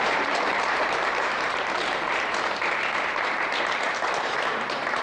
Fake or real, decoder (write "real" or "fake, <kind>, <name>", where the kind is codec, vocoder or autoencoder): fake, vocoder, BigVGAN v2